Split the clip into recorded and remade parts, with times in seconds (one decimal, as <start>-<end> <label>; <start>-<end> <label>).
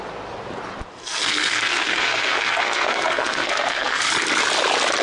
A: 0.0-1.0 recorded; 1.0-4.0 remade; 4.0-5.0 recorded